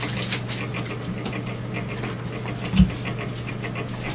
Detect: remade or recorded recorded